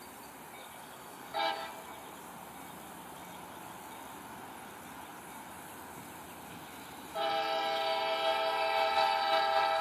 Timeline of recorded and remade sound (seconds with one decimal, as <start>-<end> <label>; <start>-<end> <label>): 0.0-0.6 recorded; 0.6-1.7 remade; 1.7-9.8 recorded